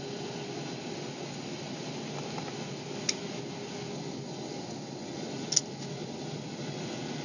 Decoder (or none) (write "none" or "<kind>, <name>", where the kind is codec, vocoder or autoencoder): none